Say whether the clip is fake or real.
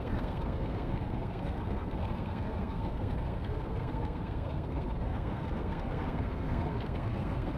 fake